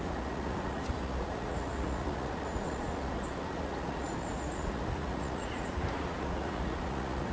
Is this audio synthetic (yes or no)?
yes